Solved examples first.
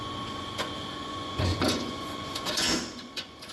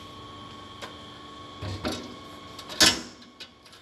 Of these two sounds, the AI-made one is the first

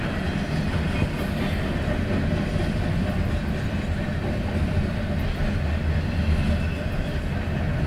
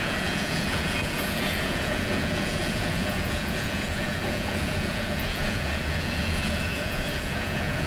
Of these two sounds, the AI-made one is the second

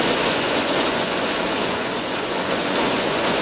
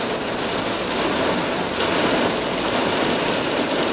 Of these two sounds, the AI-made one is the first